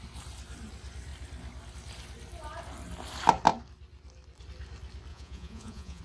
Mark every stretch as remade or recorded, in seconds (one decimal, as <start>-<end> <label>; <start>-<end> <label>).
0.0-5.1 recorded; 5.1-6.0 remade